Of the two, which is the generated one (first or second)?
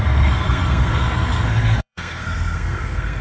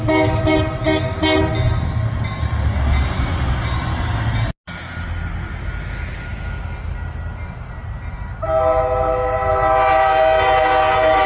first